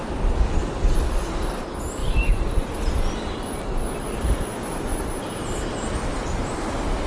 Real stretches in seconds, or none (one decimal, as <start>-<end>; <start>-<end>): 0.0-2.0; 2.8-4.9; 5.9-7.1